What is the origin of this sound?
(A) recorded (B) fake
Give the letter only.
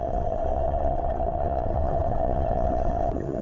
B